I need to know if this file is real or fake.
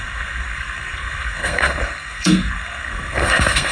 fake